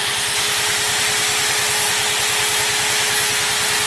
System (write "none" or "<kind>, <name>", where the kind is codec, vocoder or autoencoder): none